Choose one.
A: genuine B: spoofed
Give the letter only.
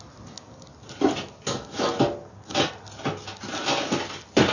A